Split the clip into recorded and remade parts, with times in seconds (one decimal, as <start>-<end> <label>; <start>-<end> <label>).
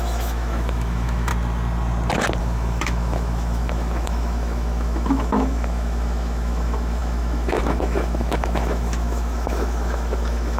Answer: 0.0-1.3 remade; 1.3-2.4 recorded; 2.4-10.6 remade